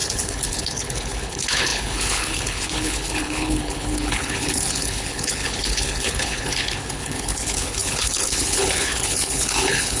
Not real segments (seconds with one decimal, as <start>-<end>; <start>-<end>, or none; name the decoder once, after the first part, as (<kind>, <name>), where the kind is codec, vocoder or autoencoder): 0.0-10.0 (codec, HILCodec)